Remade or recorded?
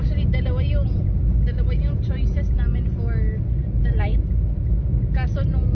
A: recorded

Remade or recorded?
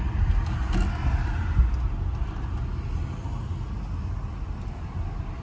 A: recorded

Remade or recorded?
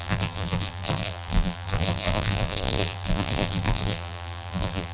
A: remade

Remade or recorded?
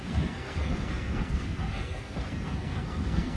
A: remade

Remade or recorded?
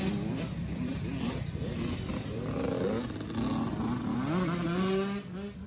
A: recorded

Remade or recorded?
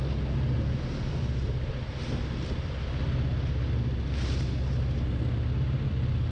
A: recorded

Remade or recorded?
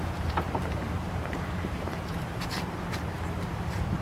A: remade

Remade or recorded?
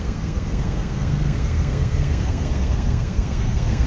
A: remade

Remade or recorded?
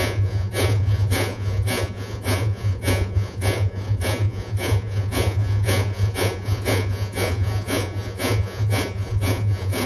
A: remade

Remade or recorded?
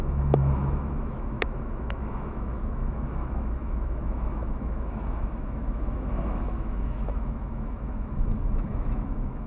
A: remade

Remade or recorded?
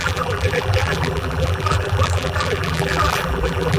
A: remade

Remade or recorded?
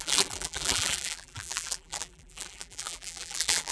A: remade